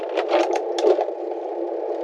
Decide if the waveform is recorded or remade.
recorded